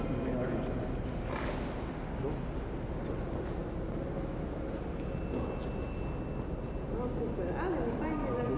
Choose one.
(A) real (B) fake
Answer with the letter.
A